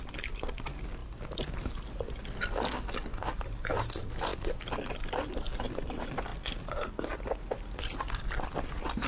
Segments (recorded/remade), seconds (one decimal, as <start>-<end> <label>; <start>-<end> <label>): 0.0-4.3 recorded; 4.3-5.6 remade; 5.6-9.1 recorded